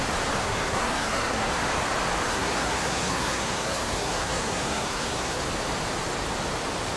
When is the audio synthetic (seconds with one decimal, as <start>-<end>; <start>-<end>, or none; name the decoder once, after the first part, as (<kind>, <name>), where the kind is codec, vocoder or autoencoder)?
0.4-1.5 (codec, SNAC); 2.3-5.4